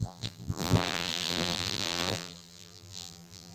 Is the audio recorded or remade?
remade